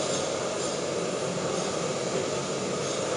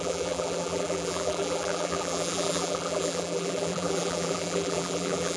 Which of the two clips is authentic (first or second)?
first